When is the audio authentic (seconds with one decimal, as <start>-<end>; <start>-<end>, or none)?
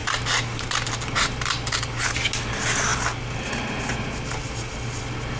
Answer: 0.0-5.4